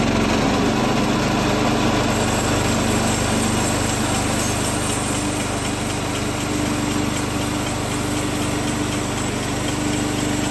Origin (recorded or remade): recorded